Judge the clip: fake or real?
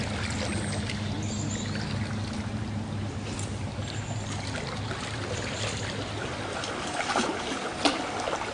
real